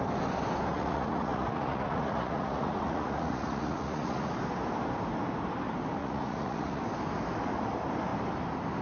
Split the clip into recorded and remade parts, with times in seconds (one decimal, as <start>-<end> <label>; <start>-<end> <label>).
0.0-0.7 recorded; 0.7-4.3 remade; 4.3-6.0 recorded; 6.0-6.8 remade; 6.8-8.8 recorded